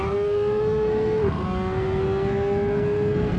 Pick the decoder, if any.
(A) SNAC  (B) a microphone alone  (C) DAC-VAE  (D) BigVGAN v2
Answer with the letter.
A